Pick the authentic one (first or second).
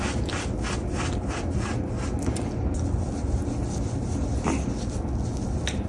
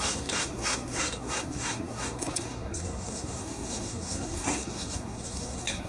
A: first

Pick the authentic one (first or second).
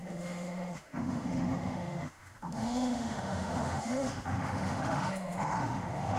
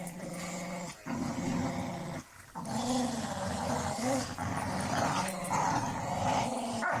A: second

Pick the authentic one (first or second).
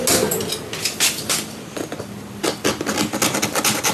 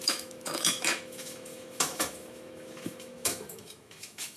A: first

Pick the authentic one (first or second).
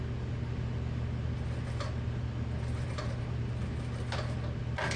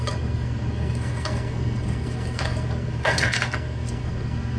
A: first